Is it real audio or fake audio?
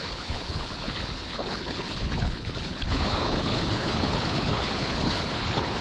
fake